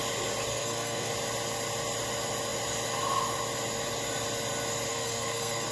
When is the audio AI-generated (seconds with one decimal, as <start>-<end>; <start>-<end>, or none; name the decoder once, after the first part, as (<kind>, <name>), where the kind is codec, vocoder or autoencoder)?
0.5-1.1 (codec, SNAC); 4.9-5.7